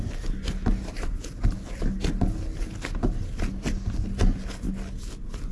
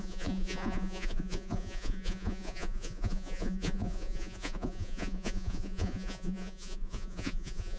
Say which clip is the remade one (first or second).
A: second